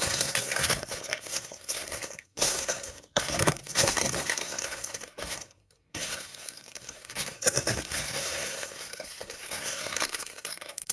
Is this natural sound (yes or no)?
no